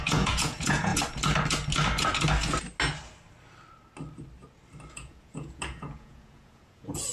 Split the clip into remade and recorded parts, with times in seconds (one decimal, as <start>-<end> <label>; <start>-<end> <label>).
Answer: 0.0-0.9 remade; 0.9-4.9 recorded; 4.9-7.1 remade